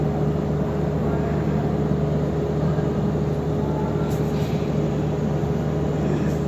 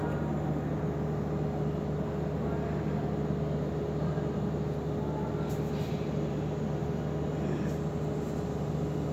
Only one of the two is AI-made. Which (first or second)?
first